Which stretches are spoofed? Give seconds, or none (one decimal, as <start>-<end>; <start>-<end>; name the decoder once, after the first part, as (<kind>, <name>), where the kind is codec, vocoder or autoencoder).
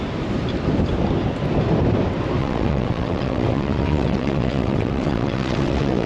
2.4-6.1 (vocoder, WaveNeXt)